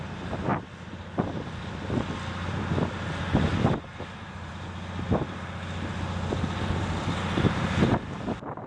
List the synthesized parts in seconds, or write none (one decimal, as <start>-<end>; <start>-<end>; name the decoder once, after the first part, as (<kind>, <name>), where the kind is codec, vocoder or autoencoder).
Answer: 3.9-4.5 (vocoder, BigVGAN v2)